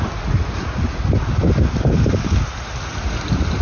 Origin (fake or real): real